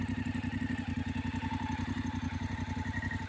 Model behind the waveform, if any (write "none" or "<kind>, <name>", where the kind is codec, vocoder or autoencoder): none